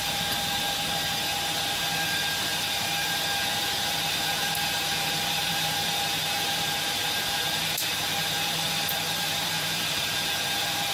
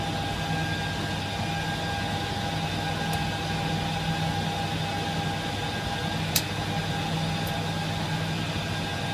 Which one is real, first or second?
second